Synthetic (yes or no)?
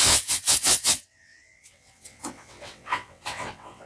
yes